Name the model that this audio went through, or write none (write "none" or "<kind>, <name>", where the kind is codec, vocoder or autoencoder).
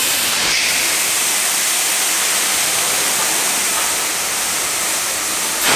vocoder, BigVGAN v2